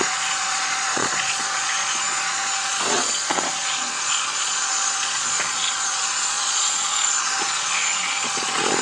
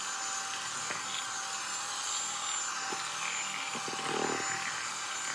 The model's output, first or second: first